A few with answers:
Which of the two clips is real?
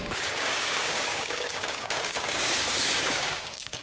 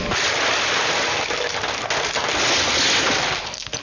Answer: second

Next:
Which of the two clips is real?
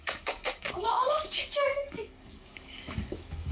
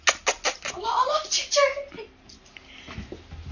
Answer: second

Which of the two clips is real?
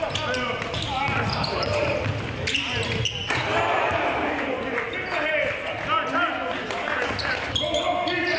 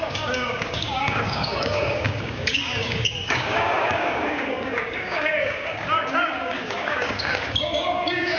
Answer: first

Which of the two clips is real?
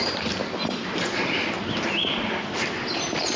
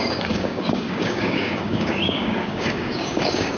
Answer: first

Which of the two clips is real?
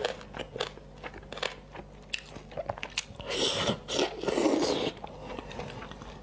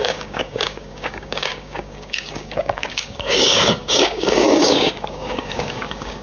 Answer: first